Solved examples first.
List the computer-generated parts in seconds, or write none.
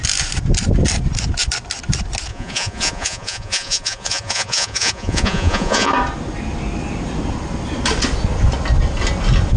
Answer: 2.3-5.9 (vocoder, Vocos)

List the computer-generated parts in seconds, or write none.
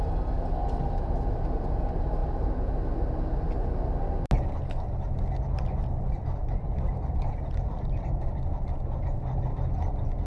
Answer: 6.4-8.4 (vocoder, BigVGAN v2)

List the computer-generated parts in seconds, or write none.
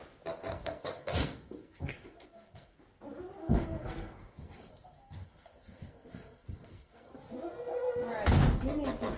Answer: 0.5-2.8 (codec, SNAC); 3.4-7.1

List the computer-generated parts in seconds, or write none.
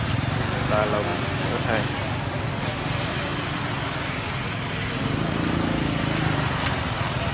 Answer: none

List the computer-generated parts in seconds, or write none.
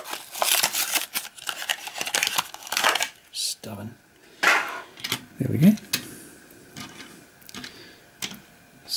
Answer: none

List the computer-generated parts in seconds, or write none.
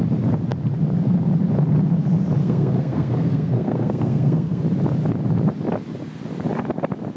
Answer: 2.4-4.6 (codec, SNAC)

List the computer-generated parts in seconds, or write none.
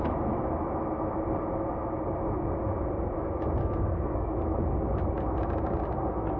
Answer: 3.6-4.3 (codec, SNAC)